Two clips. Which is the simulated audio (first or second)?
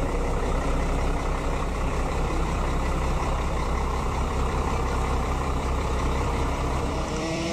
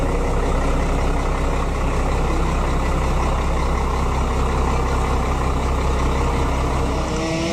first